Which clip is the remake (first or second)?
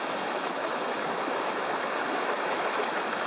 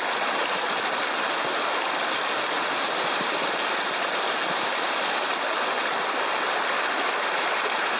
first